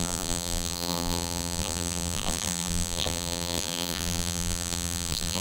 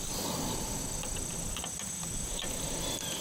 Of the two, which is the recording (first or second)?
second